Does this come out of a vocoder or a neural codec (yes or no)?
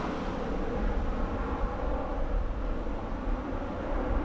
no